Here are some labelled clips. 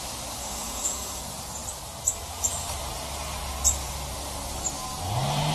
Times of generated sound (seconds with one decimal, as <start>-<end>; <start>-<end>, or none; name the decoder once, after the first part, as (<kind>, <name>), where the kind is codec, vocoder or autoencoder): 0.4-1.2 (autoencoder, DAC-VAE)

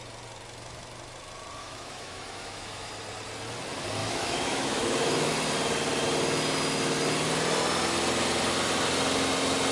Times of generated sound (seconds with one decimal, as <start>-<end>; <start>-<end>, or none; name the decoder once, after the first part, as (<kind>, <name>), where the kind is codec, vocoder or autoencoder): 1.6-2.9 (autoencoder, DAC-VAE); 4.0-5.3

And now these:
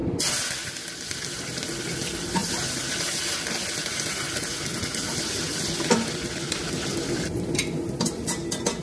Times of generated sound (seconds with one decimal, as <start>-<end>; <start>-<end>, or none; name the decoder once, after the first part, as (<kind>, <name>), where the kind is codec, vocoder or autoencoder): none